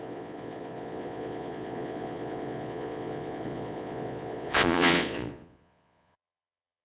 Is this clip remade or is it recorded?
remade